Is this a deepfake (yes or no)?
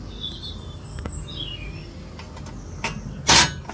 no